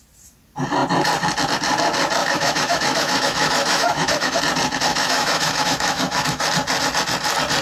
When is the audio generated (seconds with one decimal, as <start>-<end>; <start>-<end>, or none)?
2.2-4.4; 4.9-6.4